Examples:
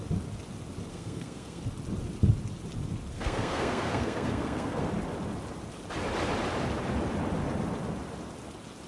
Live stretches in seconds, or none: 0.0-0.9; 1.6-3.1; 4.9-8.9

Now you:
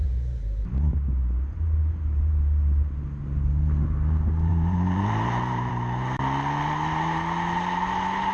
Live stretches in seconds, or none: 0.6-4.5; 5.7-8.3